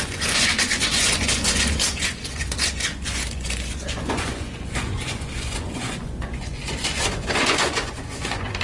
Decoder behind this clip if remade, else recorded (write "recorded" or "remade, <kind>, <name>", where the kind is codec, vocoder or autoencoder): remade, vocoder, Vocos